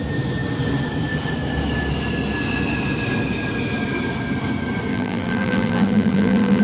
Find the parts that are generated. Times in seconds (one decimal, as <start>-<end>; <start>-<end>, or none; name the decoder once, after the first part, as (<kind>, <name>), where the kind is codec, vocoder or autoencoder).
4.9-6.6 (vocoder, BigVGAN v2)